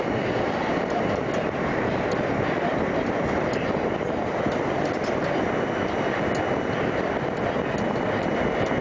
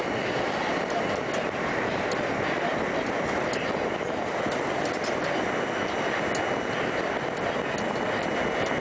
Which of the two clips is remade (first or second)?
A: first